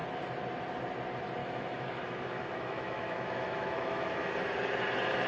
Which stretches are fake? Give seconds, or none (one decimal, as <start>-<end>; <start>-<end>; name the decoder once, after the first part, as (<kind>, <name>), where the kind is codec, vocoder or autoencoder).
1.4-4.3 (autoencoder, DAC-VAE)